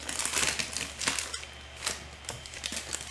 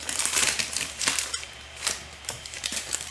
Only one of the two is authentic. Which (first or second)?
first